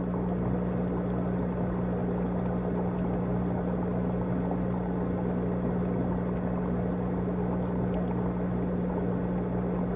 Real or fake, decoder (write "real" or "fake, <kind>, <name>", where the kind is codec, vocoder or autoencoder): real